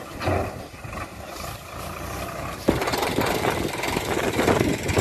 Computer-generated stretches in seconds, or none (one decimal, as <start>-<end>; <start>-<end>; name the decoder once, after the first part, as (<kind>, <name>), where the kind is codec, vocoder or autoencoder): 0.8-3.3 (vocoder, BigVGAN v2)